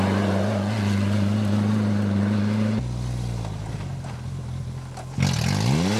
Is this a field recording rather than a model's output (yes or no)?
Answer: yes